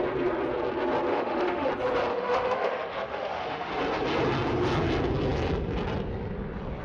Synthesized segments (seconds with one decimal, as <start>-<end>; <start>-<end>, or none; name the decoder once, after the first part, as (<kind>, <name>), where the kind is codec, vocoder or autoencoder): 1.1-1.7 (autoencoder, DAC-VAE); 2.1-3.7